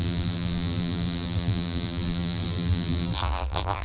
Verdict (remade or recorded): remade